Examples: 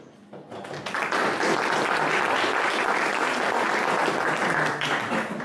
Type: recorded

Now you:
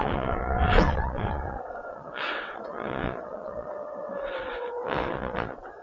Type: remade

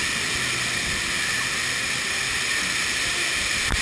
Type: recorded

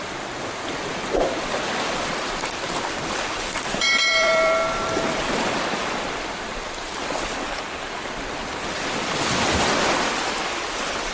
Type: remade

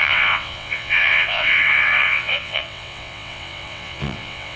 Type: remade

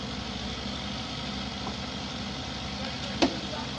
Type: recorded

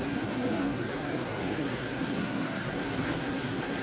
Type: remade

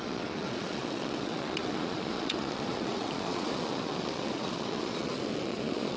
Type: remade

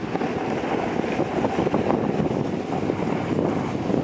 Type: recorded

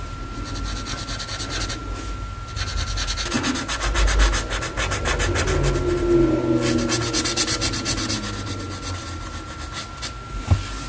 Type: recorded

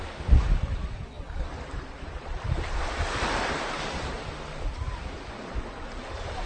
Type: recorded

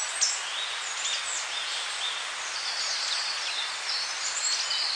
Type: recorded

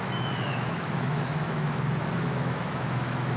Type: remade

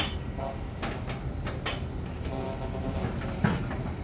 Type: recorded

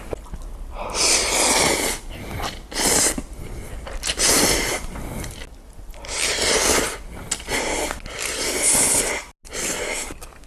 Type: recorded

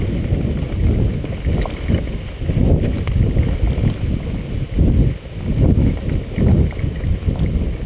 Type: recorded